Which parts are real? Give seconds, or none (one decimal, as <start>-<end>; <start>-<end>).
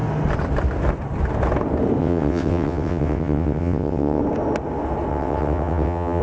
0.0-2.0; 4.2-5.1